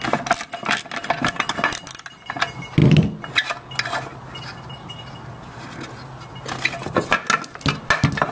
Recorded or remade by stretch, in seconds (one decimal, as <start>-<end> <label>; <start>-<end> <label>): 0.0-8.3 recorded